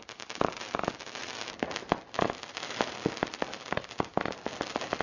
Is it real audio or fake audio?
real